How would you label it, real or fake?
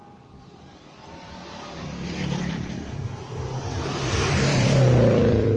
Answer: fake